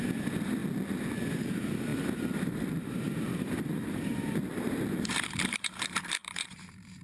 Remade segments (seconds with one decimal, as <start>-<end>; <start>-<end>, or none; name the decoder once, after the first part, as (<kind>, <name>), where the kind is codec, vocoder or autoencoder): 0.0-0.6 (vocoder, BigVGAN v2); 1.3-7.0